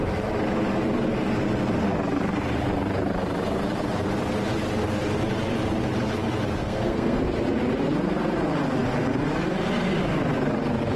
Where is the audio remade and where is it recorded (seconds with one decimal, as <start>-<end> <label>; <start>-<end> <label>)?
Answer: 0.0-6.6 recorded; 6.6-7.2 remade; 7.2-11.0 recorded